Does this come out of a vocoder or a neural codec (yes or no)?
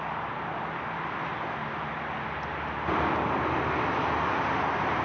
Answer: no